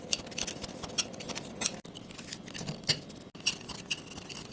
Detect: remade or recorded recorded